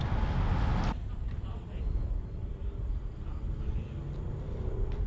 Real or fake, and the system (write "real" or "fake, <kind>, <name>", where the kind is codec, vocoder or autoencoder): real